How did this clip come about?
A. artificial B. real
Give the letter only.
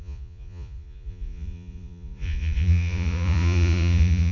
A